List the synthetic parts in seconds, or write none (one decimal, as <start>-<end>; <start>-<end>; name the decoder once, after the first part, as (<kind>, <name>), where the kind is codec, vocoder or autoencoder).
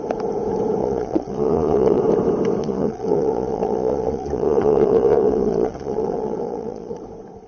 0.8-2.0 (vocoder, Vocos); 2.6-7.0